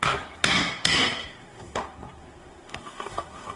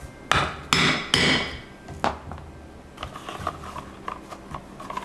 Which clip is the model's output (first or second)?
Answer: first